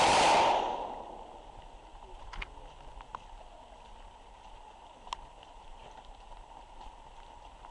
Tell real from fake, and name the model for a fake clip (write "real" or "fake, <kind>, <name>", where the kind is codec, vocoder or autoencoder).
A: real